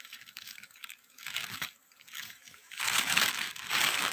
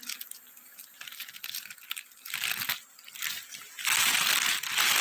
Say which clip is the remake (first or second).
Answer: first